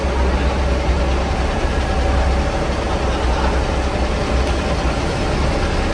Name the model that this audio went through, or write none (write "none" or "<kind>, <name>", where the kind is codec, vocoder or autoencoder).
none